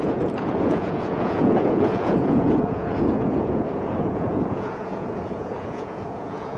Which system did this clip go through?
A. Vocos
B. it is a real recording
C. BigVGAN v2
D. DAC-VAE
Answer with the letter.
A